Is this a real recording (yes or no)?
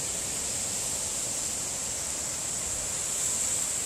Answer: yes